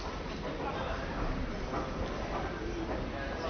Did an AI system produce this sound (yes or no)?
no